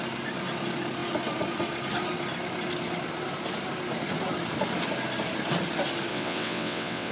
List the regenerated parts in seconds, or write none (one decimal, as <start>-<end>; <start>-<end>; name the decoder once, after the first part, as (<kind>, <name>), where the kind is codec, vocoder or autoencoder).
6.1-7.1 (vocoder, WaveNeXt)